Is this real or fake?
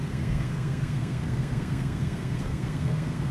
fake